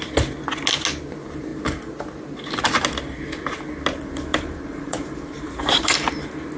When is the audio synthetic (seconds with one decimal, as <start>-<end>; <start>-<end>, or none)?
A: 4.3-6.1